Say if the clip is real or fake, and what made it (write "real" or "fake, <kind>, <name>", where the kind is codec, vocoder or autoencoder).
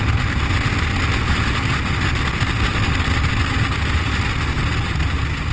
real